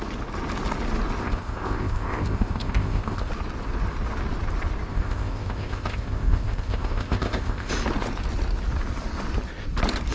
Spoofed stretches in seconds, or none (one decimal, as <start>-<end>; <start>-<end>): 1.2-3.3; 4.9-7.7